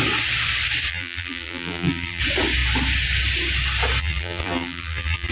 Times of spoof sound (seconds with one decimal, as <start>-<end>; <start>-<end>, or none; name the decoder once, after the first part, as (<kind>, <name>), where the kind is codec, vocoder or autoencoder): 0.9-2.2 (vocoder, BigVGAN v2); 4.0-5.3